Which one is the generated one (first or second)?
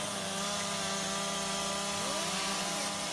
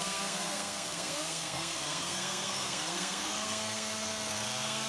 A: second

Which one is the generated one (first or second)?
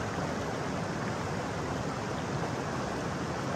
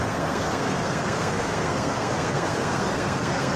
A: second